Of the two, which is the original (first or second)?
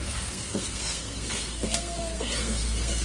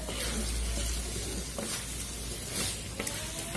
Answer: second